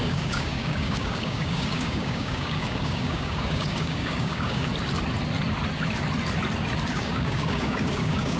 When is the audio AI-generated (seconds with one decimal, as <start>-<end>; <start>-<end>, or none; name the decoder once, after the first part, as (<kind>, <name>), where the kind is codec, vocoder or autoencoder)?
0.0-4.7 (codec, DAC); 6.9-8.4